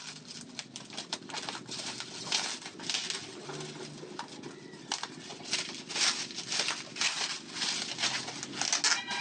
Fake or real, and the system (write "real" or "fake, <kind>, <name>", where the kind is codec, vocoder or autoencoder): real